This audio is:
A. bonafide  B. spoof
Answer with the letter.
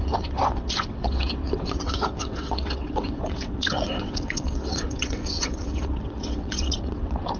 B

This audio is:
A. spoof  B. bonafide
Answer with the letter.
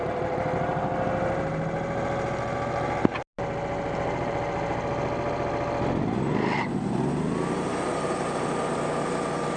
B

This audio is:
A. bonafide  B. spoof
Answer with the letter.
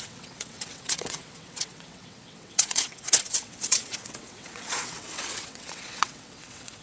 B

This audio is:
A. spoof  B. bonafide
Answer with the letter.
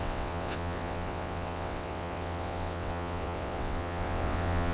A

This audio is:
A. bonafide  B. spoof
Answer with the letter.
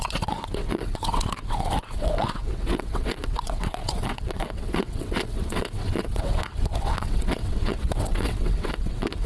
B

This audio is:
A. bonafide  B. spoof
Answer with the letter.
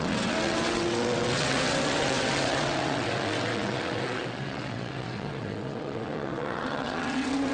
B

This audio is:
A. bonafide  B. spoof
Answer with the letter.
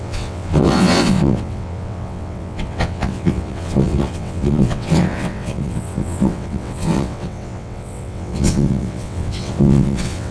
B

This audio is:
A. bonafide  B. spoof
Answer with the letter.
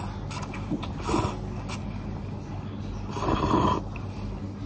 A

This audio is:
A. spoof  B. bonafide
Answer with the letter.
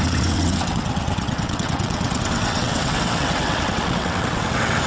A